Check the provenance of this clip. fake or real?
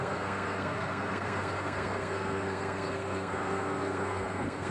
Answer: fake